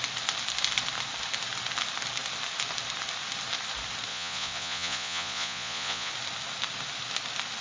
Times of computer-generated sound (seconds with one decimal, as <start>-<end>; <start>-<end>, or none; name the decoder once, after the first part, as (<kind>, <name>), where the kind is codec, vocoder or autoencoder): 4.1-6.1 (vocoder, Vocos)